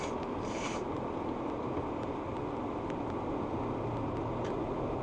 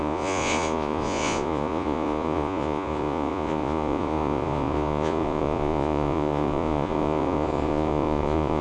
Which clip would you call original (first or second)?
first